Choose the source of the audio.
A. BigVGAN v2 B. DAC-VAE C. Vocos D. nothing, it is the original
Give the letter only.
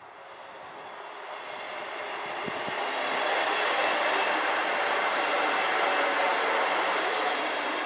D